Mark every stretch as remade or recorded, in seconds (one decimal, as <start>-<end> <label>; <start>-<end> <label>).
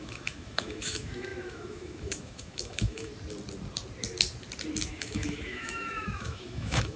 0.0-3.1 remade; 3.1-4.9 recorded; 4.9-7.0 remade